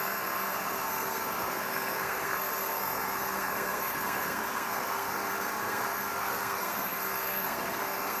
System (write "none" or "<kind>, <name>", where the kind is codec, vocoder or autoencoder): codec, SNAC